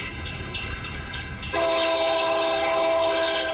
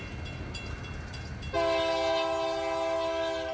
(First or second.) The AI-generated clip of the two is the first